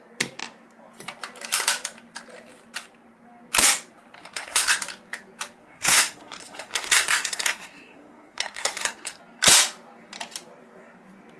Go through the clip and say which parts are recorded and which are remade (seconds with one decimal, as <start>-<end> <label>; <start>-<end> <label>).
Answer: 0.0-4.2 recorded; 4.2-4.8 remade; 4.8-5.6 recorded; 5.6-9.2 remade; 9.2-11.4 recorded